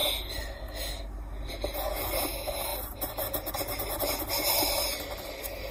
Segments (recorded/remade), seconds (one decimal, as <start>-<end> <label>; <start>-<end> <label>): 0.0-0.6 remade; 0.6-2.7 recorded; 2.7-3.5 remade; 3.5-5.7 recorded